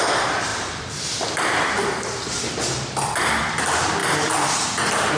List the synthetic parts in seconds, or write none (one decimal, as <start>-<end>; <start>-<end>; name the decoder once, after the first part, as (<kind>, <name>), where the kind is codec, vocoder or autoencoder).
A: 0.5-3.6 (vocoder, BigVGAN v2); 4.0-4.8